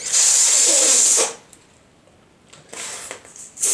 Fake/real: real